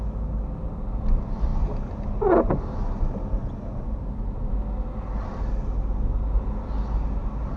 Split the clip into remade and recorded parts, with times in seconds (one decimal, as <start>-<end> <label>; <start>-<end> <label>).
0.0-7.6 recorded